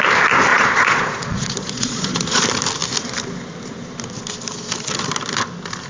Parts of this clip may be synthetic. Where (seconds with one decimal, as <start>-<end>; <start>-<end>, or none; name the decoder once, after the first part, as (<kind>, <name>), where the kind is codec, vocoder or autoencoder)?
0.5-2.4 (vocoder, Vocos)